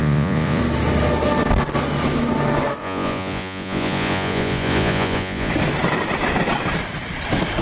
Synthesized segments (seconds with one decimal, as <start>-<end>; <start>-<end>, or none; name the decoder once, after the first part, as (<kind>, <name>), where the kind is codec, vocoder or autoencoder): 0.0-0.6 (vocoder, Vocos); 2.8-5.5